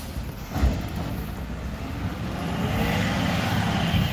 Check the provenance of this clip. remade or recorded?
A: recorded